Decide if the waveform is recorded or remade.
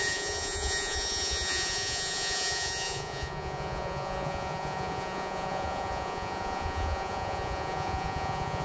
remade